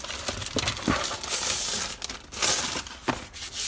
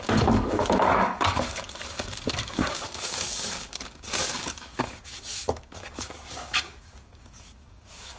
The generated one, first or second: second